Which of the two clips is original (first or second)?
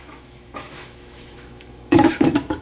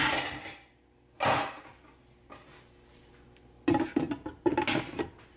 second